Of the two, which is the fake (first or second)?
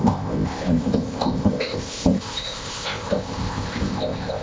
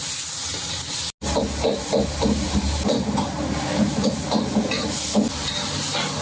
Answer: first